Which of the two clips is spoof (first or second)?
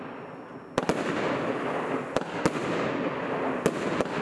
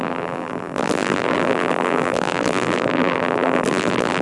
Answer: second